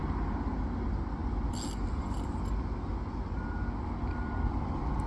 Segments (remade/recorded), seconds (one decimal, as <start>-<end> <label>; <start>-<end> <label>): 0.0-5.1 recorded